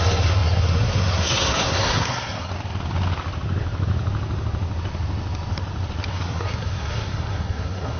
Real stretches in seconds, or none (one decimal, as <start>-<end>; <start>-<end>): 2.5-6.1